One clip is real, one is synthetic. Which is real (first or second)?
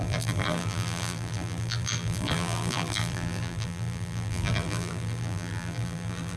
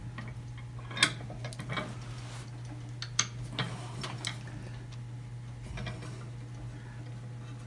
second